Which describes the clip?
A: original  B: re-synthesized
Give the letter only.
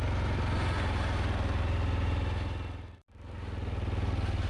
A